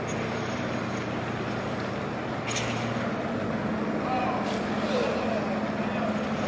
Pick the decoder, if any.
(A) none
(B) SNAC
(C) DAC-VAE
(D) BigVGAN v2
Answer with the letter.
A